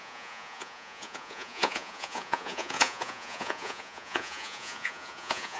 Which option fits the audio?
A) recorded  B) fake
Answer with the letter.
B